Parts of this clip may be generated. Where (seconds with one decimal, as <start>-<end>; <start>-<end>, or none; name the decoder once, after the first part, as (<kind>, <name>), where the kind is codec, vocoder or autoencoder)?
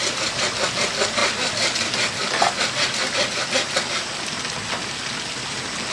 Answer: none